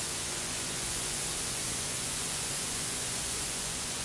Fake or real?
fake